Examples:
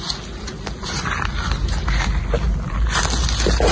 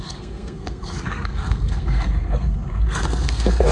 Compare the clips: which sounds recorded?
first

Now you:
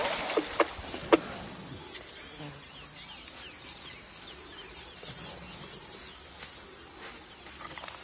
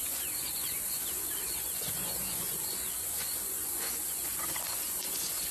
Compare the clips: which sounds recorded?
first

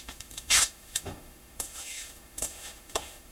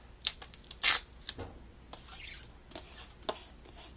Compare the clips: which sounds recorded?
second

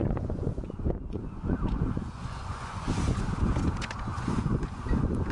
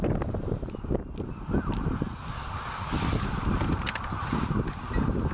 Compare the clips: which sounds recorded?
second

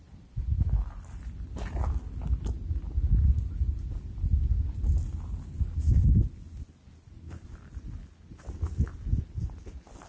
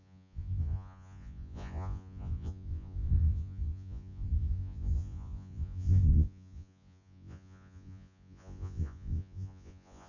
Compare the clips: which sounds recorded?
first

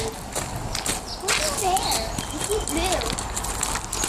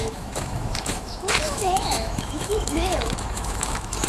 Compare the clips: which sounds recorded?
first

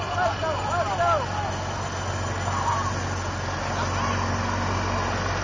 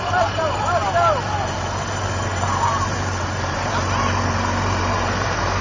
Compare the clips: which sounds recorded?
first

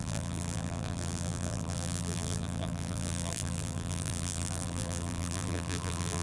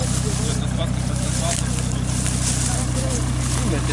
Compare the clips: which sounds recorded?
second